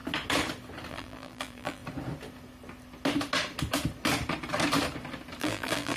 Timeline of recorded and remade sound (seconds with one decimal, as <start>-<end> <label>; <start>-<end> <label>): 0.0-0.9 recorded; 0.9-1.8 remade; 1.8-5.4 recorded; 5.4-6.0 remade